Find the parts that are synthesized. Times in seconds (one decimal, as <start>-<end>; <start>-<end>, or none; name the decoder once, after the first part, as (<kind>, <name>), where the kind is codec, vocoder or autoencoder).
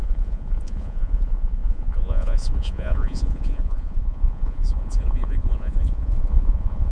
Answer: 0.0-6.9 (vocoder, Vocos)